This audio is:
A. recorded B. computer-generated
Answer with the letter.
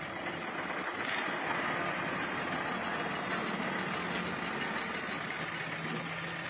A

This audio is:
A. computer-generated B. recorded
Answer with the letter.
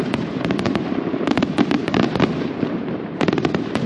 A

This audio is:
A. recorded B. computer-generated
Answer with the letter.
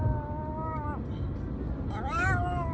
A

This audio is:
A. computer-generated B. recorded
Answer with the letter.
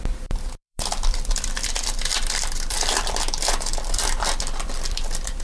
A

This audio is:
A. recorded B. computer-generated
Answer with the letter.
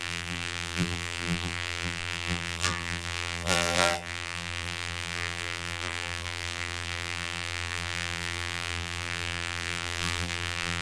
B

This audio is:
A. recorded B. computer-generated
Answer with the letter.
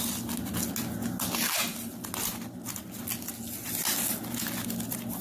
A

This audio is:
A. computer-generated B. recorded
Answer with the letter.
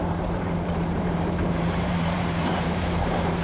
A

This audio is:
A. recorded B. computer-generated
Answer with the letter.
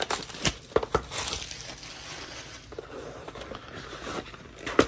A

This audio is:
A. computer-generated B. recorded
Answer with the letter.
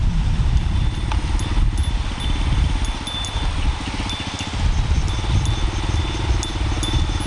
B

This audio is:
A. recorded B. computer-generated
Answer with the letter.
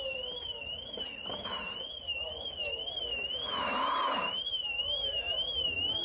A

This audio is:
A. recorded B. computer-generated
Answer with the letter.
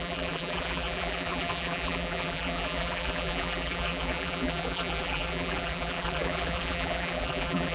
B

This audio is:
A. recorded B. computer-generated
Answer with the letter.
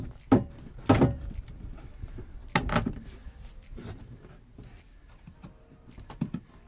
A